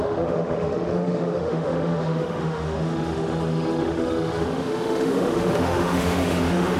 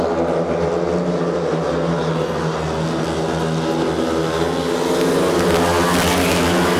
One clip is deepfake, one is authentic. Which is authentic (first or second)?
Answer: second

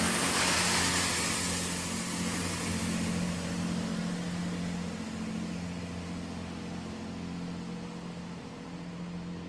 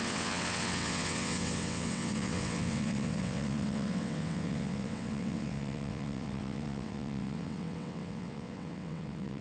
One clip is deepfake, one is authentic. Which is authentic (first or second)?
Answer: first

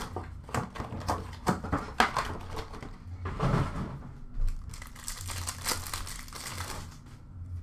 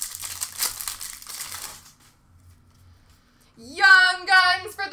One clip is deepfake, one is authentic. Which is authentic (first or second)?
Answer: first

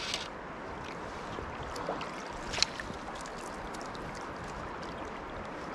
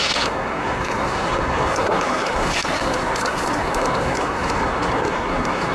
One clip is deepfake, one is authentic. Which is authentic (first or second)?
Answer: first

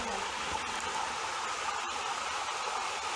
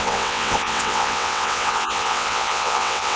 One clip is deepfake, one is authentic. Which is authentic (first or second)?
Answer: first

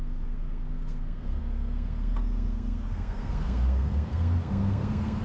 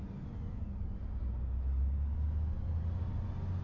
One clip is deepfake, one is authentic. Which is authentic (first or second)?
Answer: second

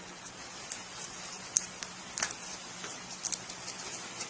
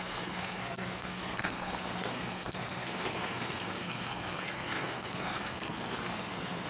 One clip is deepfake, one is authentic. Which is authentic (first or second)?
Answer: first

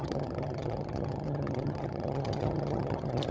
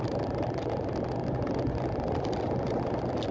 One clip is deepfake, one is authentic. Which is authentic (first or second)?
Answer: second